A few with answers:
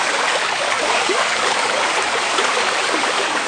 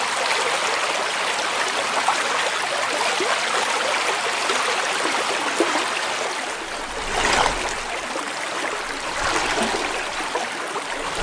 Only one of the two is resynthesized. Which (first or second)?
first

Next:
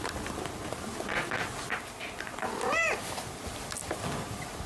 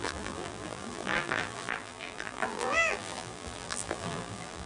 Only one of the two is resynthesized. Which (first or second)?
second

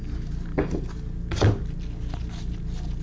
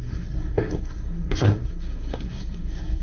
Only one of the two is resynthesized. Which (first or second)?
second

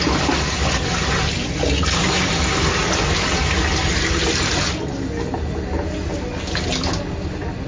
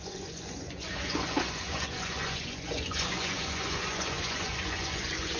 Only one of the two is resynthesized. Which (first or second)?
second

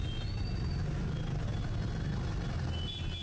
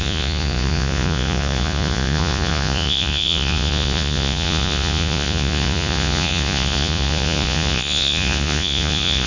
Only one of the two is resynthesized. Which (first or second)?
second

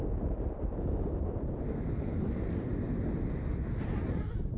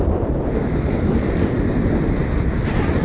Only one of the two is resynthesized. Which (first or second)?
second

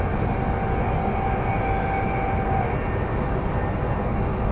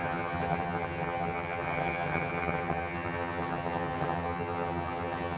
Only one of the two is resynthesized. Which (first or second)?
second